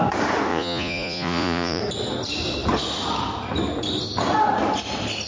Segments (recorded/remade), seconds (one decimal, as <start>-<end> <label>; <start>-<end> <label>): 0.0-0.5 recorded; 0.5-1.8 remade; 1.8-5.3 recorded